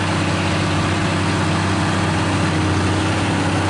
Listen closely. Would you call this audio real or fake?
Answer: real